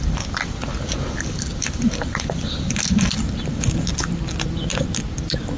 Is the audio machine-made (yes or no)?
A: no